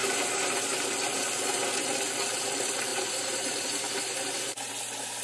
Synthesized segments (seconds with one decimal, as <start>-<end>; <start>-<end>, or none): 0.0-0.9; 2.9-4.7